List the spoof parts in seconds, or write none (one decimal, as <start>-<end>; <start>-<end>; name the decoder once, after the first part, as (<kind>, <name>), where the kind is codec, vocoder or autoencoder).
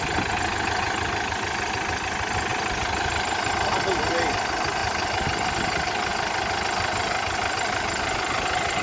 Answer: 0.0-1.0 (vocoder, BigVGAN v2); 2.5-3.5; 6.1-8.8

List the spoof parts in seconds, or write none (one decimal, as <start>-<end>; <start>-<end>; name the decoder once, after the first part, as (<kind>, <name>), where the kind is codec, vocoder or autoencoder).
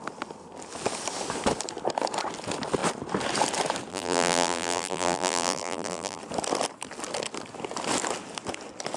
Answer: 3.9-6.2 (vocoder, BigVGAN v2)